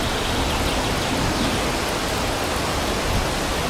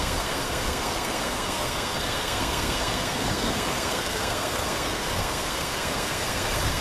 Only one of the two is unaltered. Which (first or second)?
first